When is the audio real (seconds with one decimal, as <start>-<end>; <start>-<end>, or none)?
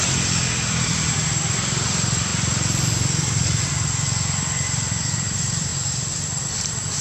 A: none